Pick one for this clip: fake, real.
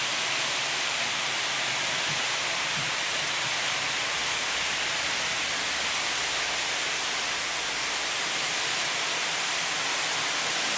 real